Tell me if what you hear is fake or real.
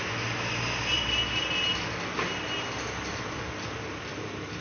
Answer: real